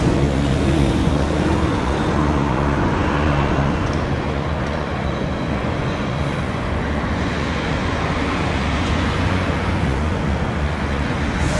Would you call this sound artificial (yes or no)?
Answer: yes